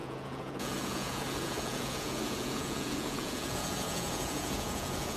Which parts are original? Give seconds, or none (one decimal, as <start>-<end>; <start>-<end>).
none